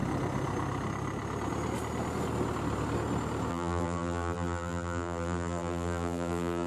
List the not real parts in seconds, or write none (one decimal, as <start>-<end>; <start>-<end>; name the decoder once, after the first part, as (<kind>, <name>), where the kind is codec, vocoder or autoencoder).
3.5-6.7 (vocoder, BigVGAN v2)